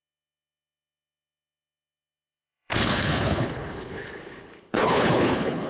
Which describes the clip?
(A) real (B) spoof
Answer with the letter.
B